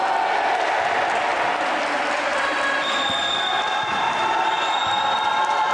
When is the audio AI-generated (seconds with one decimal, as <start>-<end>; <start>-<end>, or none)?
none